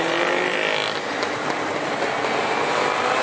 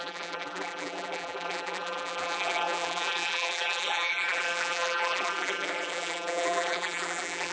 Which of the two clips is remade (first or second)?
second